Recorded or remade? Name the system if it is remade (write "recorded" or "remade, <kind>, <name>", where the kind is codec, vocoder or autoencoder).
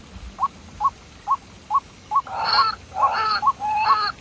recorded